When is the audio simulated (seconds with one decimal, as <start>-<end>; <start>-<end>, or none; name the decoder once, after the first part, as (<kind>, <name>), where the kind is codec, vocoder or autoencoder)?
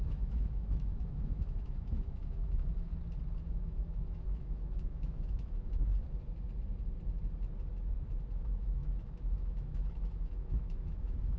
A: 0.0-2.9 (autoencoder, DAC-VAE); 3.6-5.9; 8.4-11.4